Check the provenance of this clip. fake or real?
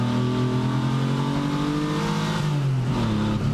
real